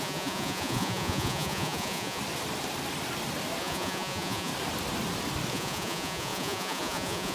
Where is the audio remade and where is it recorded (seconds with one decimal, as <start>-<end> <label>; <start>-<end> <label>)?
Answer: 0.0-2.2 remade; 2.2-3.6 recorded; 3.6-4.5 remade; 4.5-5.5 recorded; 5.5-7.3 remade